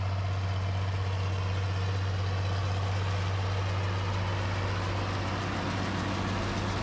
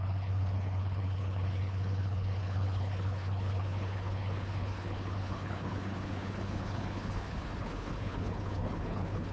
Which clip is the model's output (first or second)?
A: second